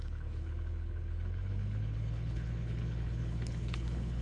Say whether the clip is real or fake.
fake